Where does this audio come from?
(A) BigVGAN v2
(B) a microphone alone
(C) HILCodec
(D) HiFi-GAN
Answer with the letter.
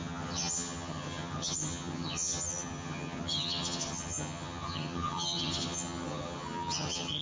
D